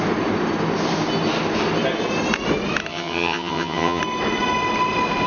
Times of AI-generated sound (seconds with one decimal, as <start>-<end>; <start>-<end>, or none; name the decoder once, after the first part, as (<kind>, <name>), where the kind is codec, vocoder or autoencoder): 2.9-4.0 (vocoder, HiFi-GAN)